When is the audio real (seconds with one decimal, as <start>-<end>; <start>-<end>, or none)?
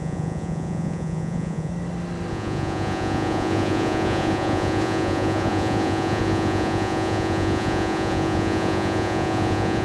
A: 1.7-2.3